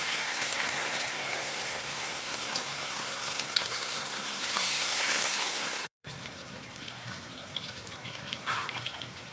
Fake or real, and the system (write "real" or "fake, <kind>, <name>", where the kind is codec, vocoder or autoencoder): fake, codec, SNAC